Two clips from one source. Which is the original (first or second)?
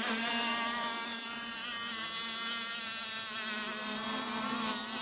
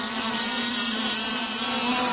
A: first